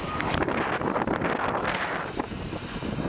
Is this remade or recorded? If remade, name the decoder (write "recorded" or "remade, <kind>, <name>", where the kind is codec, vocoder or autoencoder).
recorded